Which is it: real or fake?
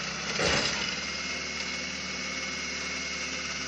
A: real